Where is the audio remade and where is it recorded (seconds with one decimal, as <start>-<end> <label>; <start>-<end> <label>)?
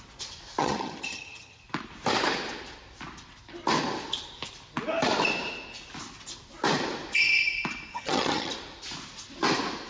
0.0-0.6 recorded; 0.6-1.6 remade; 1.6-7.9 recorded; 7.9-8.5 remade; 8.5-9.9 recorded